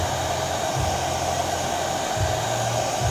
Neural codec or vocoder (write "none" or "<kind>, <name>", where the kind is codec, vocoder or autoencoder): none